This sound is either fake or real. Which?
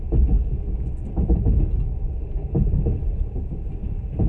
real